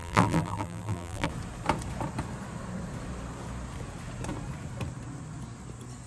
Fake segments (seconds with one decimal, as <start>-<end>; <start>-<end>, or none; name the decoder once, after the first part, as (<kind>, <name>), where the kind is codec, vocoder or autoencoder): 0.0-1.3 (vocoder, BigVGAN v2)

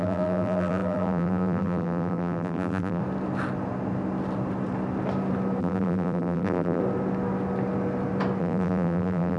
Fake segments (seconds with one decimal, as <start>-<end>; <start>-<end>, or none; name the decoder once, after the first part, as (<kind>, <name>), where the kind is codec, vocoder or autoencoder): 0.0-3.0 (vocoder, BigVGAN v2); 5.6-6.8; 8.4-9.4